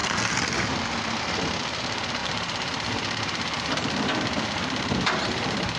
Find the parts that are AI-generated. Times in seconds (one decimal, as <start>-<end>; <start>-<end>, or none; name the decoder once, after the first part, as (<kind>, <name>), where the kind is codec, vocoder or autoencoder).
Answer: 1.6-5.8 (vocoder, BigVGAN v2)